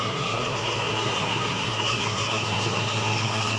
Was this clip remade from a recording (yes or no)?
yes